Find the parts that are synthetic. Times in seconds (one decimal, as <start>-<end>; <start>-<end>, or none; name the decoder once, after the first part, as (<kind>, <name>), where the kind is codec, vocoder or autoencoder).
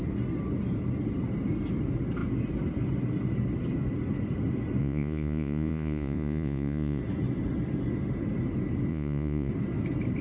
4.8-7.0 (vocoder, Vocos); 8.9-9.5